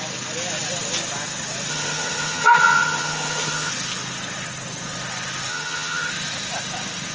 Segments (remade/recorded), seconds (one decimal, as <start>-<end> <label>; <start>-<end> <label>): 0.0-1.7 recorded; 1.7-3.7 remade; 3.7-5.5 recorded; 5.5-6.1 remade; 6.1-7.1 recorded